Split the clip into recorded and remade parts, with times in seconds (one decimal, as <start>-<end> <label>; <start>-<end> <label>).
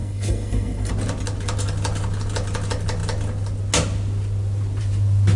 0.0-0.9 remade; 0.9-5.4 recorded